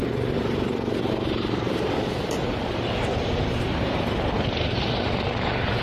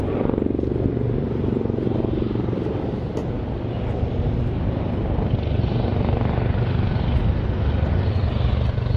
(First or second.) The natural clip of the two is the second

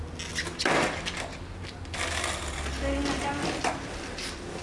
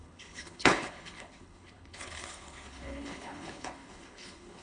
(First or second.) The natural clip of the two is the first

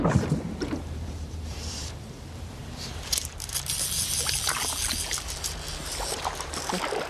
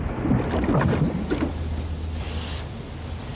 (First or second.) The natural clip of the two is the second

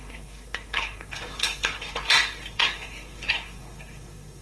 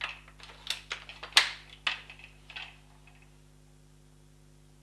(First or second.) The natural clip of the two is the second